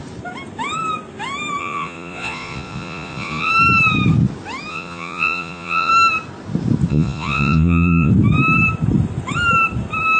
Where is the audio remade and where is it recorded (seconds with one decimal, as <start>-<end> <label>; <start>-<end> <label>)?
0.0-1.6 recorded; 1.6-3.5 remade; 3.5-4.7 recorded; 4.7-5.9 remade; 5.9-6.9 recorded; 6.9-8.1 remade; 8.1-10.2 recorded